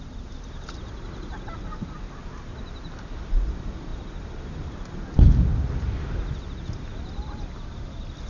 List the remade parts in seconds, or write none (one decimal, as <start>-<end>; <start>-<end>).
none